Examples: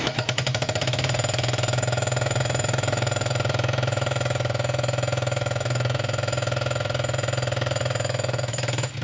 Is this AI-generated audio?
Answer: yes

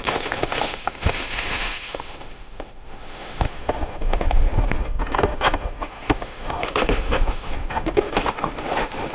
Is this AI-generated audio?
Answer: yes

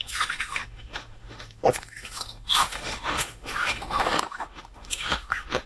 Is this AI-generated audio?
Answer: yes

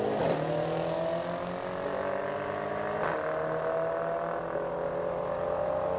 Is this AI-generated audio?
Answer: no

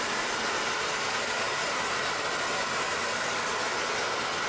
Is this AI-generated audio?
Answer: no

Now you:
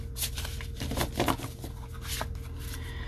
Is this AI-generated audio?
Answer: no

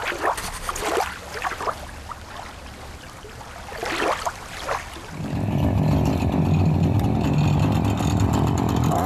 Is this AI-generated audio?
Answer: no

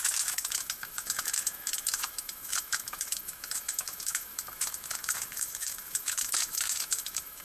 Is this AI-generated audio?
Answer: yes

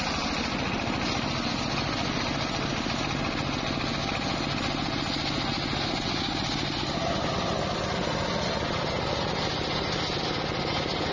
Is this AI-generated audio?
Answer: no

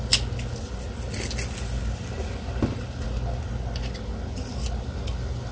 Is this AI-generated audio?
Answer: no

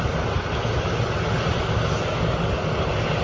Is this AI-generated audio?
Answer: no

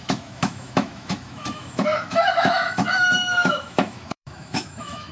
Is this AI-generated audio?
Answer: yes